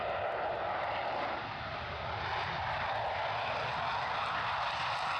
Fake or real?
real